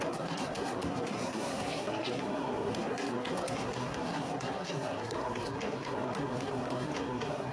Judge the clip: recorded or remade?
remade